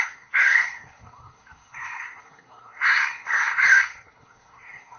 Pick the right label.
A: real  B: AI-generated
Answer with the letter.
B